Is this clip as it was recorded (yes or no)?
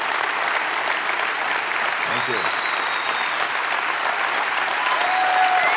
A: yes